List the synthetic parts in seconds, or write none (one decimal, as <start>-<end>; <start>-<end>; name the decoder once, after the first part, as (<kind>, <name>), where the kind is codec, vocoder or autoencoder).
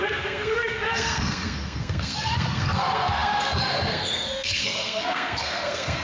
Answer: 0.0-6.0 (codec, SNAC)